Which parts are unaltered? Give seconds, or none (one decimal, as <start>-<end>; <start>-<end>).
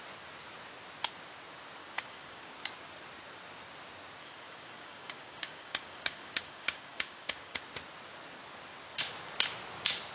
0.0-1.8; 2.4-4.2; 7.6-10.1